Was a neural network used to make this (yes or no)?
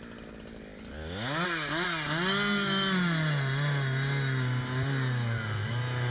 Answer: no